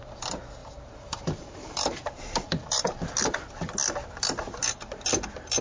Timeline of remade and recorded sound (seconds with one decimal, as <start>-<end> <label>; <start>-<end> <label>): 0.0-0.6 recorded; 0.6-3.0 remade; 3.0-5.6 recorded